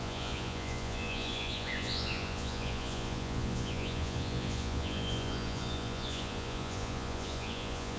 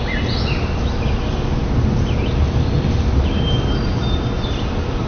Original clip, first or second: second